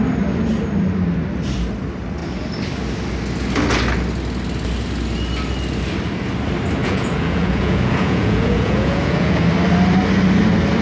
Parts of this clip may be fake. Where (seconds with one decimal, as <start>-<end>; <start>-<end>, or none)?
6.8-9.4